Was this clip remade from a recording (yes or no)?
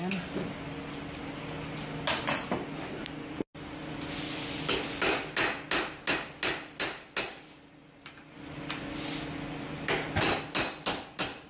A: no